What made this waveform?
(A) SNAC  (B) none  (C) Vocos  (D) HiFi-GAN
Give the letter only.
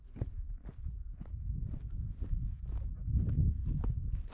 B